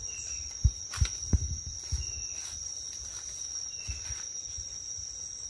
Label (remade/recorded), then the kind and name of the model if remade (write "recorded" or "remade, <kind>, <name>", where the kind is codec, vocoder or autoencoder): recorded